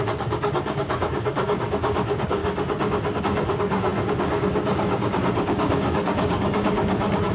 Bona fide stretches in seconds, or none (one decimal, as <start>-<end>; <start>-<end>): 2.4-3.2